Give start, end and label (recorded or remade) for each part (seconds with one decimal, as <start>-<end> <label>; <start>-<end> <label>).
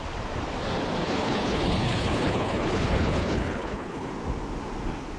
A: 0.0-1.0 recorded; 1.0-4.1 remade; 4.1-5.2 recorded